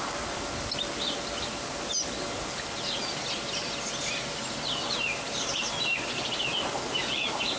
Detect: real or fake real